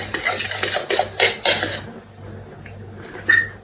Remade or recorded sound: recorded